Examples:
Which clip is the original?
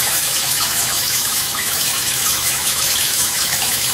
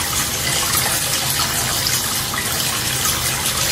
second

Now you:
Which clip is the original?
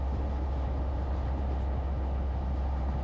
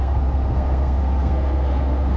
first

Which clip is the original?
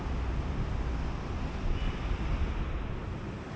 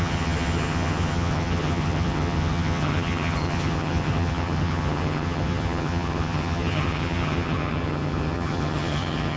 first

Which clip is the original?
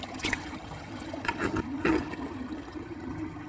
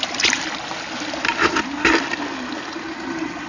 second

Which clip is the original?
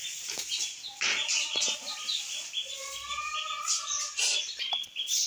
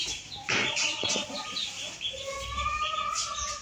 first